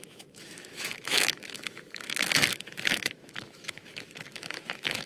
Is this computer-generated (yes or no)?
yes